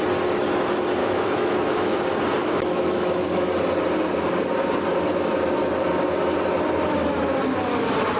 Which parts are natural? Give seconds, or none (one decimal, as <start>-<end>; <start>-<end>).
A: 0.0-1.0; 2.0-2.4; 3.5-8.2